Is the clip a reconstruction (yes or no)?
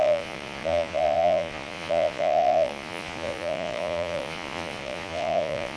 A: yes